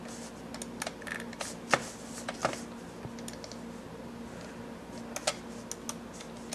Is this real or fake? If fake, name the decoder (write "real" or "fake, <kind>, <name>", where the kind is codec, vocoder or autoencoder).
real